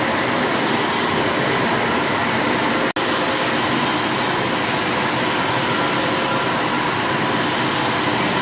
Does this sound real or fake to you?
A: real